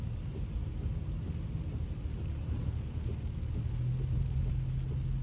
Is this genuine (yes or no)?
yes